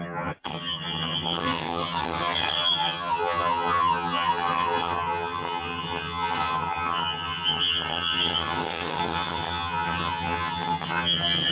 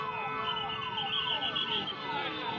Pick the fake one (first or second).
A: first